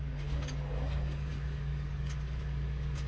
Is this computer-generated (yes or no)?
yes